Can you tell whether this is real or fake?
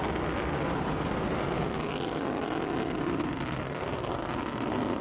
real